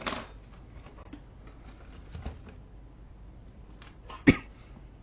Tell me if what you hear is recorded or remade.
recorded